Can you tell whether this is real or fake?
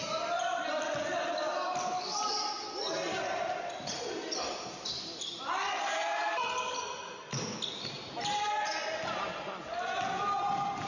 real